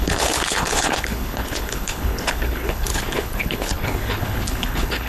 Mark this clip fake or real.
fake